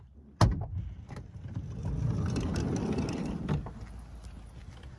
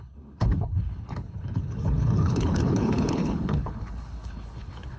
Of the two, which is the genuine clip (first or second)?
first